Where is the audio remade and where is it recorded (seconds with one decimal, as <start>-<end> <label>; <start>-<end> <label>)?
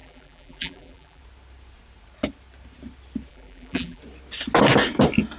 0.0-1.2 remade; 1.2-3.3 recorded; 3.3-4.0 remade; 4.0-5.4 recorded